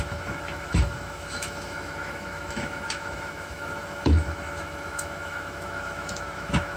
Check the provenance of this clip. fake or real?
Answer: fake